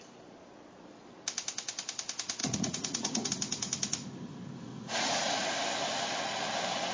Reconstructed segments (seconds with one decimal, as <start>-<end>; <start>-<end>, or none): 2.4-3.3; 4.7-5.6